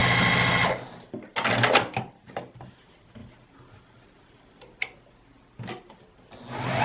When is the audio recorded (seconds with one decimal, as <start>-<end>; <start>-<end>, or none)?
0.0-6.8